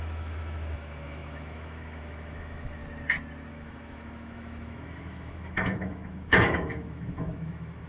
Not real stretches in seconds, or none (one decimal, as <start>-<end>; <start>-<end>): 0.0-2.8; 3.5-7.9